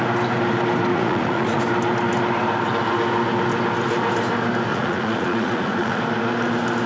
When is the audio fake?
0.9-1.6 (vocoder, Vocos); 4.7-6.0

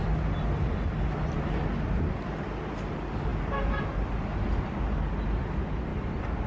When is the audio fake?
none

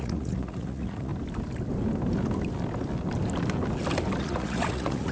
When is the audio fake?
0.0-1.1 (vocoder, Vocos); 4.2-5.1

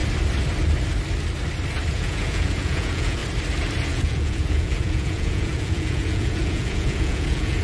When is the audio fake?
1.9-3.2 (vocoder, Vocos); 3.9-7.6

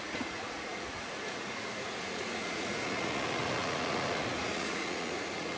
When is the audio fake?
0.0-5.6 (vocoder, Vocos)

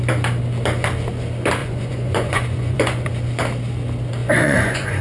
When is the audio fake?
1.6-3.1 (vocoder, Vocos); 4.2-5.0

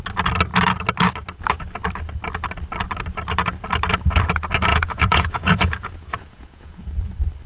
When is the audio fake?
4.7-6.8 (vocoder, Vocos)